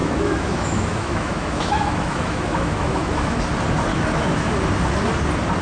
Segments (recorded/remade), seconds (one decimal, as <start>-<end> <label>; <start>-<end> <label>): 0.0-3.4 remade; 3.4-3.9 recorded; 3.9-4.5 remade; 4.5-5.6 recorded